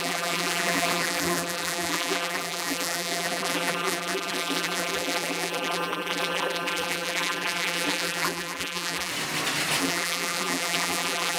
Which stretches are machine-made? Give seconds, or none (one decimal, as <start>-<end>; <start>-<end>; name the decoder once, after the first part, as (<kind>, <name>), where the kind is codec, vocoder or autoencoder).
0.0-9.1 (vocoder, BigVGAN v2); 9.8-11.4